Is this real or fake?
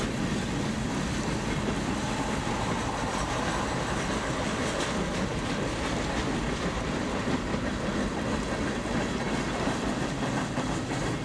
real